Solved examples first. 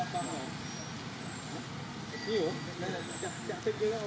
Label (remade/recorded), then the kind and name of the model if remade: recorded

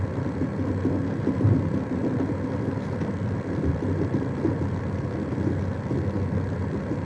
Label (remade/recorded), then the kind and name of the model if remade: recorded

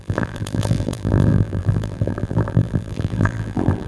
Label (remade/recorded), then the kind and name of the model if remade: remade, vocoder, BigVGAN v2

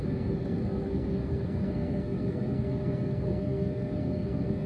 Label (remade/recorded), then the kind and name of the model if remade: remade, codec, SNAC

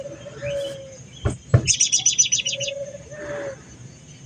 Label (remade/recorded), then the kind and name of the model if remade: recorded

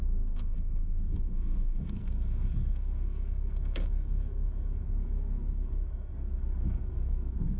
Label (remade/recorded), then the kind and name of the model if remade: remade, codec, SNAC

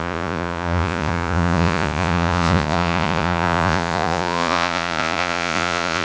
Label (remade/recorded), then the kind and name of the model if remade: remade, vocoder, Vocos